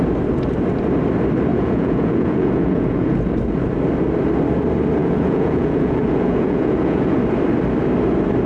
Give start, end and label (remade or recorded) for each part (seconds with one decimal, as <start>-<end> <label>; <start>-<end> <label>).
0.0-1.5 recorded; 1.5-3.3 remade; 3.3-5.0 recorded; 5.0-7.2 remade; 7.2-8.5 recorded

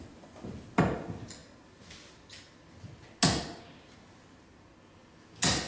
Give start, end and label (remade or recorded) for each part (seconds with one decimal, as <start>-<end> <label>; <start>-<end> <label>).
0.0-5.7 recorded

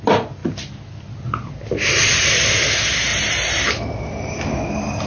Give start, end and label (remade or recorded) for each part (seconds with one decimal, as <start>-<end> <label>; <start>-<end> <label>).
0.0-5.1 recorded

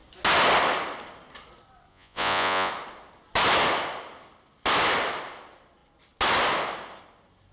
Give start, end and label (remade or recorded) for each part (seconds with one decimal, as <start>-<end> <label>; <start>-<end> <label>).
0.0-1.9 recorded; 1.9-2.7 remade; 2.7-7.5 recorded

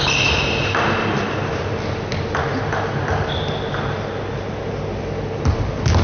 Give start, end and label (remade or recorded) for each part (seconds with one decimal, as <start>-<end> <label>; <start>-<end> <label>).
0.0-6.0 recorded

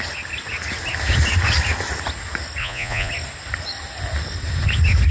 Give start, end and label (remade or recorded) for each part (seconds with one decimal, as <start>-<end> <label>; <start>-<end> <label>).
0.0-2.6 recorded; 2.6-3.1 remade; 3.1-5.1 recorded